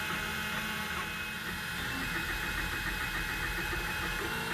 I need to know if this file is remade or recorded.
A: recorded